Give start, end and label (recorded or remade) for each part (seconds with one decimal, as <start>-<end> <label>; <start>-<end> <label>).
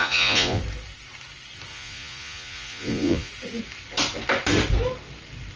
0.0-0.6 remade; 0.6-1.7 recorded; 1.7-3.3 remade; 3.3-5.6 recorded